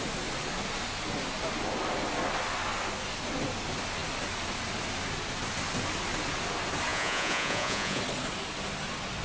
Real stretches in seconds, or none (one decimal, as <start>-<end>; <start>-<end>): 0.0-6.9; 8.0-9.2